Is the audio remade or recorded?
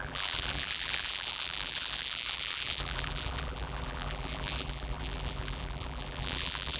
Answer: remade